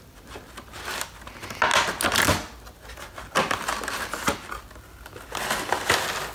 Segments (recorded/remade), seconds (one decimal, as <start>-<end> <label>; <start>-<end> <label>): 0.0-6.3 recorded